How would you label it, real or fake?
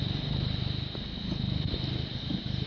real